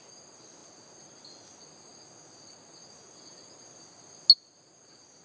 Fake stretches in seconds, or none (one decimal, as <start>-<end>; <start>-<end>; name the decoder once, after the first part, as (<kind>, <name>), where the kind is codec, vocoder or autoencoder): none